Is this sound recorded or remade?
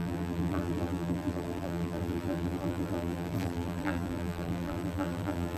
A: remade